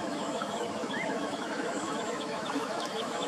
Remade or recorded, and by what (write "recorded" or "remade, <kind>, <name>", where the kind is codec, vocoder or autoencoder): remade, autoencoder, DAC-VAE